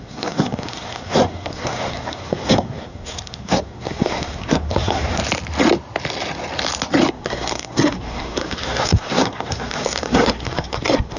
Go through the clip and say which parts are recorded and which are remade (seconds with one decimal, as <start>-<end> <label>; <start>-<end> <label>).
0.0-5.2 remade; 5.2-7.1 recorded; 7.1-11.2 remade